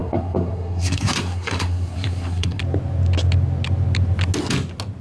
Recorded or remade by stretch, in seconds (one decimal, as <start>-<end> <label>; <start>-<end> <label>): 0.0-2.6 remade; 2.6-5.0 recorded